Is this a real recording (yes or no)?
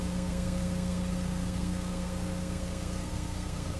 no